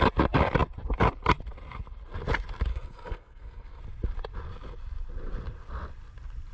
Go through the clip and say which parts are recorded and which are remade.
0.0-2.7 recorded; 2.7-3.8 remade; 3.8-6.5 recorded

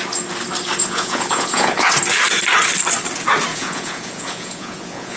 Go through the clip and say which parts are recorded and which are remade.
0.0-0.8 recorded; 0.8-1.9 remade; 1.9-3.5 recorded; 3.5-5.2 remade

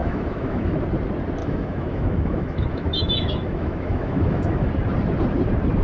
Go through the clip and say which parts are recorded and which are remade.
0.0-0.8 remade; 0.8-1.4 recorded; 1.4-4.7 remade; 4.7-5.8 recorded